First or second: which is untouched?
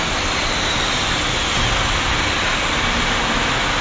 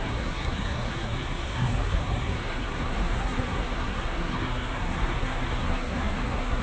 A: first